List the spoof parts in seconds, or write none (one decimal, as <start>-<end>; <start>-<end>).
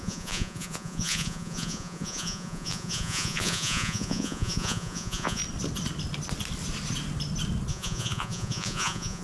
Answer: 0.0-5.4; 7.7-9.2